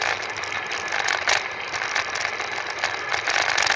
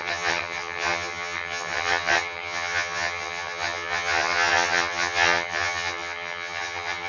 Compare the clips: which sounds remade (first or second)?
second